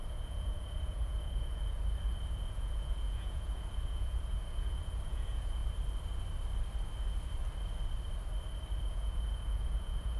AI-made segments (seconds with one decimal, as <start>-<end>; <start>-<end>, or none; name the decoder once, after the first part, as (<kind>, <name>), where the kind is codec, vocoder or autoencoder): 0.0-5.6 (vocoder, Vocos); 8.9-10.2